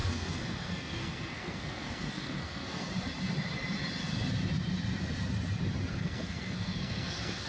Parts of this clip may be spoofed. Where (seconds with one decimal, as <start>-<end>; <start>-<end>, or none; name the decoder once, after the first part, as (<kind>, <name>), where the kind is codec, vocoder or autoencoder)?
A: 0.0-2.9 (codec, SNAC); 5.9-7.5